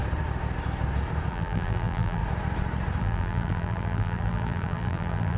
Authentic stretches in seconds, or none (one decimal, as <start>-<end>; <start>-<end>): 0.0-1.3; 2.2-3.0